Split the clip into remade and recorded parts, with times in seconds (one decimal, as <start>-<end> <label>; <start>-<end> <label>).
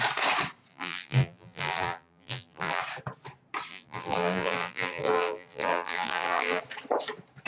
0.0-0.7 recorded; 0.7-2.8 remade; 2.8-3.7 recorded; 3.7-6.6 remade; 6.6-7.5 recorded